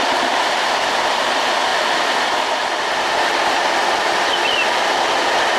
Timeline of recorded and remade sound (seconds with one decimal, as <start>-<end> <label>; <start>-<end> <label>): 0.0-5.6 recorded